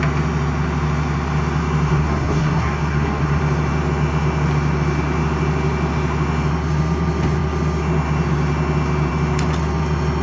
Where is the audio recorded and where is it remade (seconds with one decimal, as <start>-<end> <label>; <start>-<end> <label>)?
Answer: 0.0-1.9 recorded; 1.9-3.4 remade; 3.4-10.2 recorded